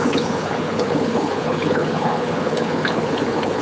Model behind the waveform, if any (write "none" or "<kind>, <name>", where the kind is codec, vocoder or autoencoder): codec, HILCodec